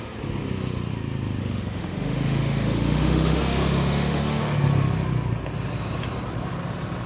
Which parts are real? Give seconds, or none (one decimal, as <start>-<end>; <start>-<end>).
0.0-1.4; 4.4-7.1